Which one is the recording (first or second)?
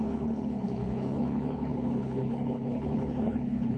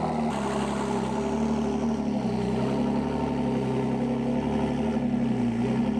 second